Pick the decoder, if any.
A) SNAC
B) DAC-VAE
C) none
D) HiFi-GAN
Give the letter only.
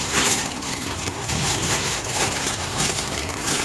A